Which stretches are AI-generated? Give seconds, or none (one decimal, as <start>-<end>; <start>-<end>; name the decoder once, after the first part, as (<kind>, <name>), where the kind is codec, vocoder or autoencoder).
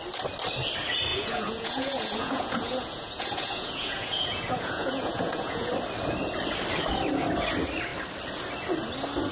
1.1-5.7 (vocoder, Vocos)